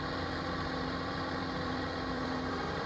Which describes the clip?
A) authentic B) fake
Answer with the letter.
B